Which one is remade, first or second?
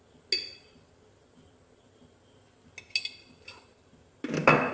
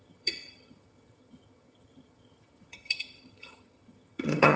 second